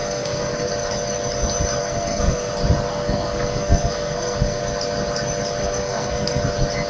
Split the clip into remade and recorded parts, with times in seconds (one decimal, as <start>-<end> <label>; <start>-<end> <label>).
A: 0.0-0.7 remade; 0.7-1.8 recorded; 1.8-2.5 remade; 2.5-2.9 recorded; 2.9-4.6 remade; 4.6-5.6 recorded; 5.6-6.4 remade; 6.4-6.9 recorded